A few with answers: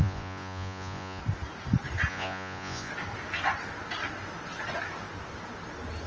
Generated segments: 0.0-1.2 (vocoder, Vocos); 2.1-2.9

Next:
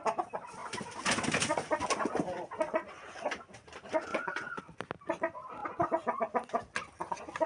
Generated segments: 4.1-4.6 (vocoder, Vocos)

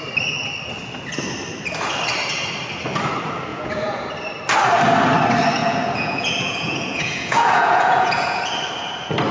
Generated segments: 3.5-4.1 (vocoder, Vocos); 5.6-8.4

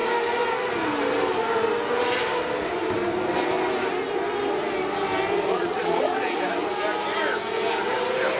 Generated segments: 5.5-6.4 (vocoder, Vocos)

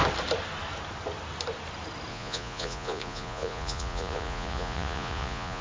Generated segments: 2.1-5.6 (vocoder, Vocos)

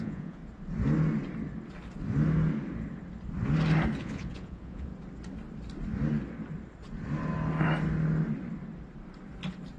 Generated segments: 0.0-0.4 (vocoder, Vocos); 4.0-4.9

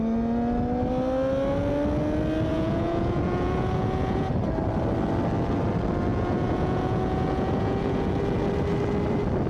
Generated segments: 2.5-4.3 (vocoder, Vocos); 6.1-8.1